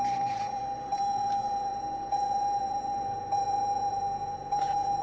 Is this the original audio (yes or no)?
no